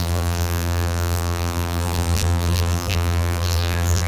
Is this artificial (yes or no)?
yes